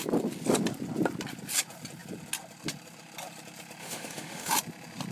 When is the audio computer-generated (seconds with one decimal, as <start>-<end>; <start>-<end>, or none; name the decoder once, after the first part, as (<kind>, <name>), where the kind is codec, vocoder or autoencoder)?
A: 3.8-4.5 (autoencoder, DAC-VAE)